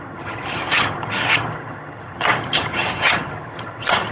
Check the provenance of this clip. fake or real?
fake